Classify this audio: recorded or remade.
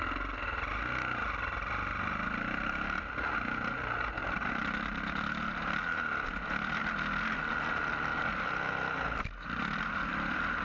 recorded